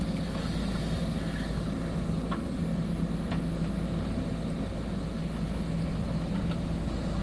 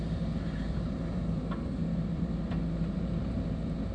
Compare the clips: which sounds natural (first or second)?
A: first